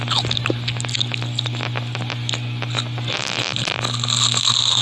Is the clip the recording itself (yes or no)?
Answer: yes